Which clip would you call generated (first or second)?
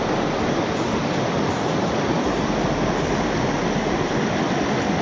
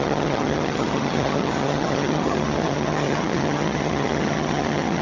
second